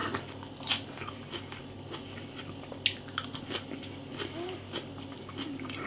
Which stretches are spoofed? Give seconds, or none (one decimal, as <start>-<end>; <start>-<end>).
none